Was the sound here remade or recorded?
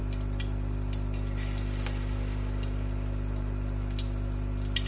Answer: recorded